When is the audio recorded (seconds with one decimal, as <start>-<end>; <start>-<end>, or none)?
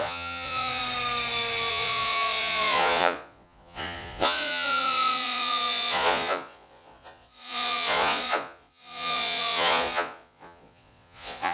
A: 0.8-1.7